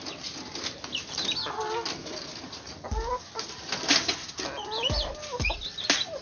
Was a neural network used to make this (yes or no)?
no